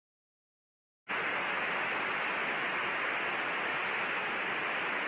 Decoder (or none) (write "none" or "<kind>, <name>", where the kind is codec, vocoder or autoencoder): none